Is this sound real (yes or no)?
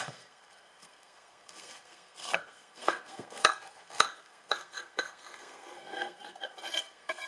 no